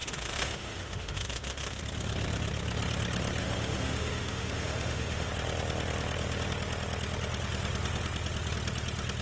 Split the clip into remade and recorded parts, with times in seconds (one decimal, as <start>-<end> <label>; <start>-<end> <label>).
0.0-1.8 remade; 1.8-3.4 recorded; 3.4-5.3 remade; 5.3-9.2 recorded